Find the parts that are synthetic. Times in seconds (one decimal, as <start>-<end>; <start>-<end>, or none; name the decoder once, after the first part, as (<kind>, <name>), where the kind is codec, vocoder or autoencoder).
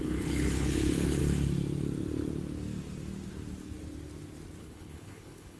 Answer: 0.0-1.2 (codec, HILCodec); 4.6-5.6